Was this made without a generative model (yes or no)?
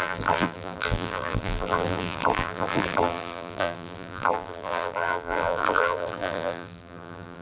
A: no